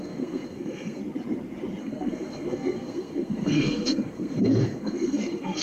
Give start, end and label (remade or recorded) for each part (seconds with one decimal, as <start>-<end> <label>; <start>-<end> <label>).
0.0-1.0 remade; 1.0-1.8 recorded; 1.8-5.6 remade